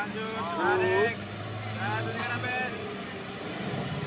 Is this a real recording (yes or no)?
yes